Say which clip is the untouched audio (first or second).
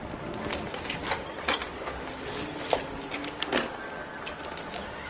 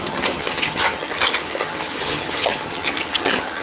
first